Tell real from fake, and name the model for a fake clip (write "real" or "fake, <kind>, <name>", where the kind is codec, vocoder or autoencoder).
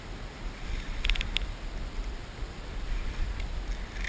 real